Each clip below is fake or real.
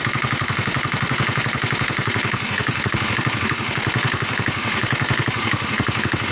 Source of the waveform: fake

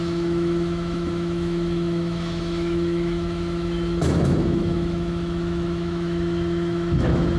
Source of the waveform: fake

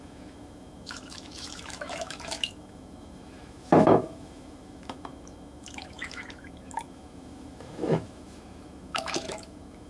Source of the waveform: fake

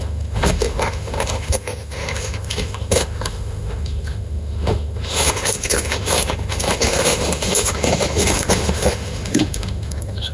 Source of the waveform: fake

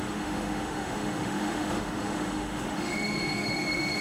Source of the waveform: fake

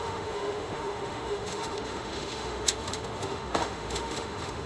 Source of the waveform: fake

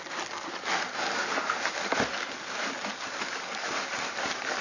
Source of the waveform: real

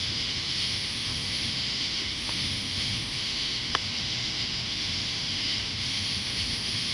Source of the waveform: fake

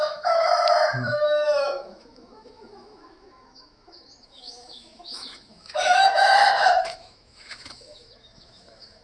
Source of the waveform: fake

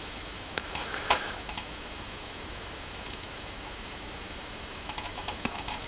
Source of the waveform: fake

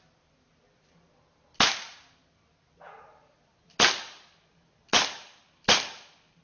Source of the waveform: real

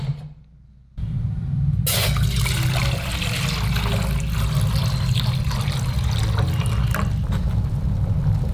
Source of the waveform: real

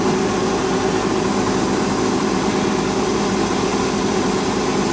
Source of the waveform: real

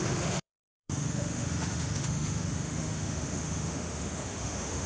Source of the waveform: fake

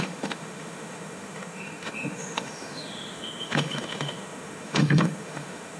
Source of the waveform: fake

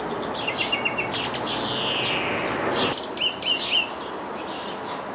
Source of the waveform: real